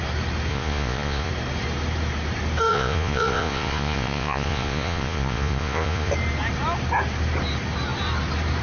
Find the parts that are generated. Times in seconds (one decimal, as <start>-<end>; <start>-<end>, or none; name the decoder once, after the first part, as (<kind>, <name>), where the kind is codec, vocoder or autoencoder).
0.5-1.3 (vocoder, Vocos); 2.7-6.1